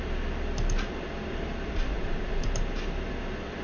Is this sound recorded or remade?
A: recorded